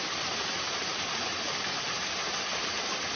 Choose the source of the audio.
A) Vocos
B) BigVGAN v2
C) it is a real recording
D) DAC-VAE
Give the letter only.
B